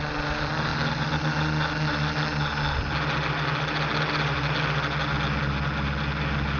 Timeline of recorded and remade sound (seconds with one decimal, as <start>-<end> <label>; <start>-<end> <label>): 0.0-6.6 recorded